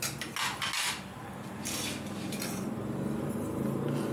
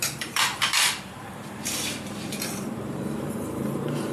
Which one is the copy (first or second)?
second